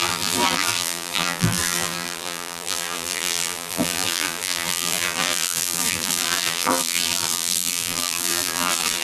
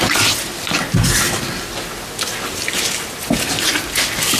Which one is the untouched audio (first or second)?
second